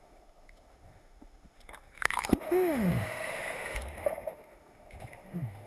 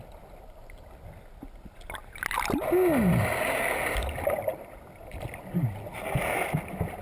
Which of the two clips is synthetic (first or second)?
first